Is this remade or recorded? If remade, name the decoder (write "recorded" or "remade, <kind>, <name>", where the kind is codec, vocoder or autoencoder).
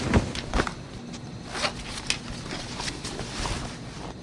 recorded